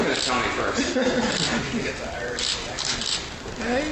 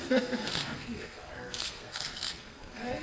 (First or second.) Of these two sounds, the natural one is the first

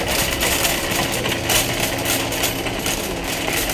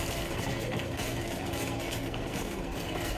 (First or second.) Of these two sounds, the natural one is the first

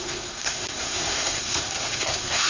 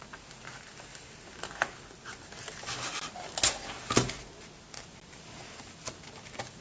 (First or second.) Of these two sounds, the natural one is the second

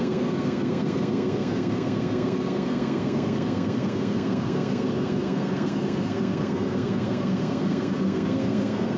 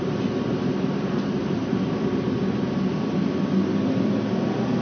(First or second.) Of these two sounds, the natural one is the second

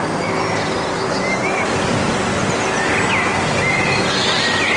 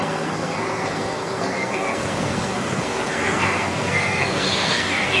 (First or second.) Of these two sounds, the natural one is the first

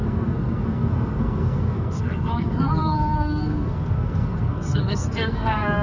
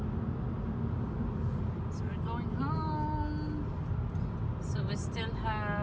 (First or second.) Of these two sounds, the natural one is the second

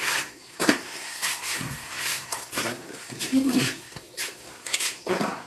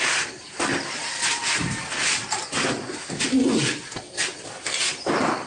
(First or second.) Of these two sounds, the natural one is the second